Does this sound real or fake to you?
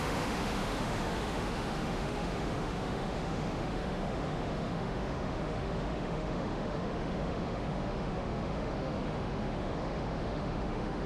fake